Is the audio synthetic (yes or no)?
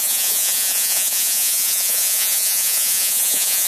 yes